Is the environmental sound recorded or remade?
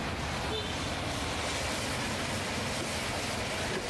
recorded